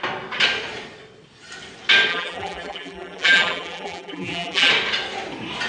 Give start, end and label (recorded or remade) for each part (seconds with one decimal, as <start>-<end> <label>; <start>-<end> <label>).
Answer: 0.0-2.1 recorded; 2.1-4.7 remade; 4.7-5.7 recorded